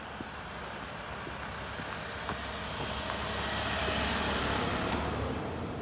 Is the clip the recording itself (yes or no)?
yes